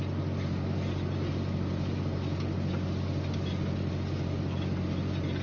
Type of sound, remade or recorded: recorded